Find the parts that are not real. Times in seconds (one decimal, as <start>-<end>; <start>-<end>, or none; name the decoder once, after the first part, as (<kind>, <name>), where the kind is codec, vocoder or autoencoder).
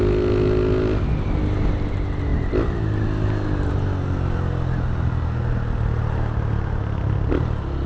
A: none